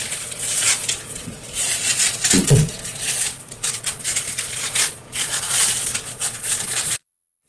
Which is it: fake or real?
fake